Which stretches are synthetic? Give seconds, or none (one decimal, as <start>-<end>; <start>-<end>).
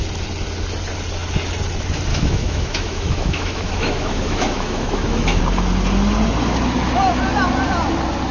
2.1-5.4